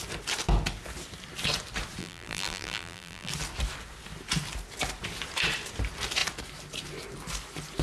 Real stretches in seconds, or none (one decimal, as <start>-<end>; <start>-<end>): 0.0-2.0; 3.3-7.8